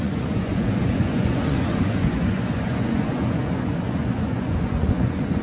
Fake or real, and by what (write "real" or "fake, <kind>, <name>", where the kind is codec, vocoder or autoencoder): fake, vocoder, Vocos